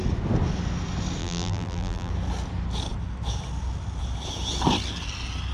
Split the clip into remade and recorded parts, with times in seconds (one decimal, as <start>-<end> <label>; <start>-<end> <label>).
0.0-1.2 recorded; 1.2-2.1 remade; 2.1-5.5 recorded